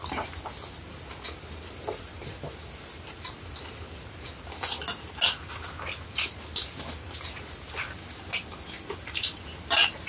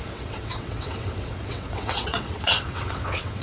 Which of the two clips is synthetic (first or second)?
second